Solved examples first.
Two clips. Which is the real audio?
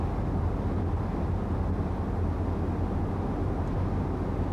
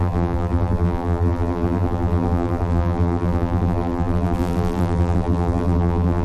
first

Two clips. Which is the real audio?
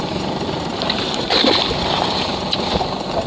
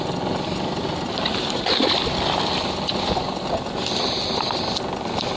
second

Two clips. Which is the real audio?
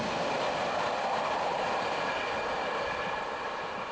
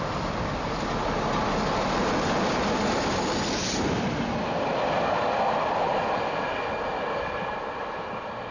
second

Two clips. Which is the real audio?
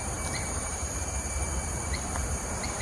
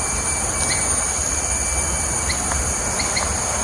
second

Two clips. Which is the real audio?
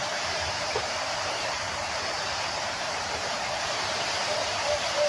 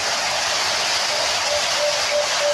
second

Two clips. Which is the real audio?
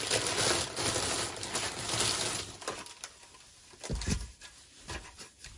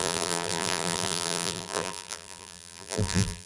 first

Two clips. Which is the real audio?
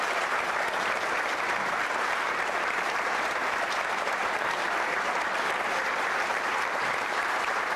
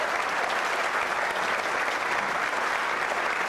second